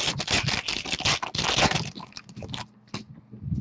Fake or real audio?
real